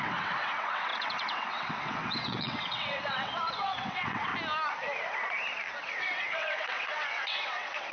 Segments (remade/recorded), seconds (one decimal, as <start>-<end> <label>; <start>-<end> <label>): 0.0-4.3 remade; 4.3-5.8 recorded; 5.8-7.9 remade